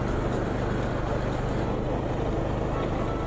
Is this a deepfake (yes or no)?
no